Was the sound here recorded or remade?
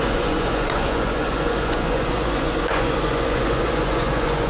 remade